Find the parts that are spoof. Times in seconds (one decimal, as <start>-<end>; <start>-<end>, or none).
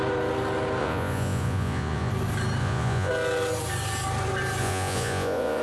0.8-2.1; 2.6-3.1; 4.6-5.6